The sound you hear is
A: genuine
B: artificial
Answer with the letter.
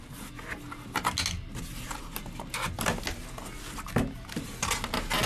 A